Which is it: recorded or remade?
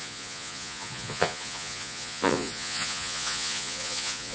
remade